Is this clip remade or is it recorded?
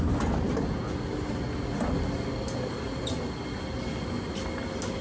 recorded